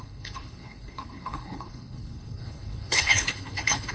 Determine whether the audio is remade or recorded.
remade